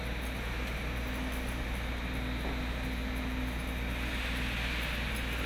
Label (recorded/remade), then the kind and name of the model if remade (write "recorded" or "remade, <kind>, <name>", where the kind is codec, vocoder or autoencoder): recorded